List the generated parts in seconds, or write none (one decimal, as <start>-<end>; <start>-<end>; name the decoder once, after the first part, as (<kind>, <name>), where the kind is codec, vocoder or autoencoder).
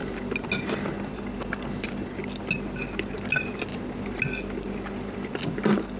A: none